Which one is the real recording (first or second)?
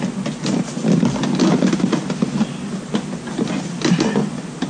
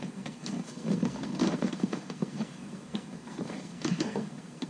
first